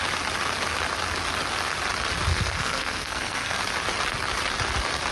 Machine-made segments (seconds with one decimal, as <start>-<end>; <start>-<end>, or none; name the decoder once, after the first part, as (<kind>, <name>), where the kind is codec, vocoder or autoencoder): 2.3-3.6 (codec, SNAC)